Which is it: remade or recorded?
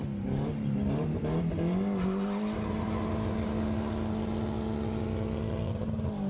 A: recorded